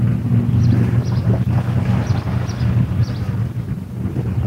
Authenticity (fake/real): real